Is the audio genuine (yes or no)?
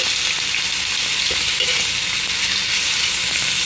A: yes